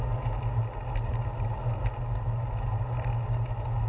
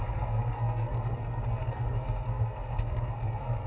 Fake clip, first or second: second